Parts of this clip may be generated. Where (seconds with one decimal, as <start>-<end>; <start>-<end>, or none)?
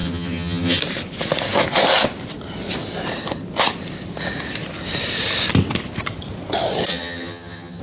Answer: 0.0-0.8; 6.9-7.8